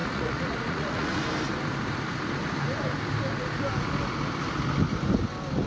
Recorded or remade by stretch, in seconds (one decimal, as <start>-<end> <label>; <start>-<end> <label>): 0.0-1.2 remade; 1.2-5.7 recorded